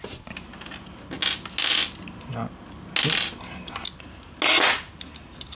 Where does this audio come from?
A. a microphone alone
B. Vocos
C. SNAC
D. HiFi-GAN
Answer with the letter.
A